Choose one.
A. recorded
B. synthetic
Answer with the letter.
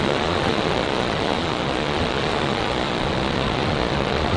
B